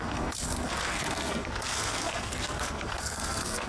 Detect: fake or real fake